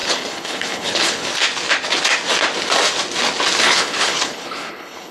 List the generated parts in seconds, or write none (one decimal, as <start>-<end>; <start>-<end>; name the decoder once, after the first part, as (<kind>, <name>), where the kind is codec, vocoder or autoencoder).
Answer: 0.0-1.3 (codec, HILCodec); 3.6-5.1